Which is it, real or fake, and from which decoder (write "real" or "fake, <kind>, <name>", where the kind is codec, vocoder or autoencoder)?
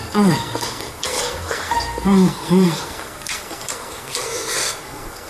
fake, codec, SNAC